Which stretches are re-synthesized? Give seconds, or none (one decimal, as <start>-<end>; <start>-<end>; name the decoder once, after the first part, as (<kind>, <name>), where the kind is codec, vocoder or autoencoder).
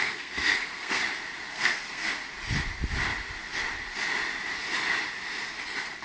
0.0-1.0 (codec, SNAC); 1.5-2.2